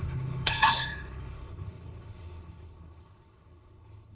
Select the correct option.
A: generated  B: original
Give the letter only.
A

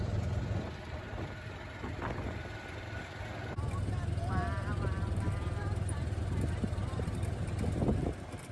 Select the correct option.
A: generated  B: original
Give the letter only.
B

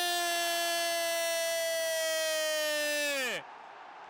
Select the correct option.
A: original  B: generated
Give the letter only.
A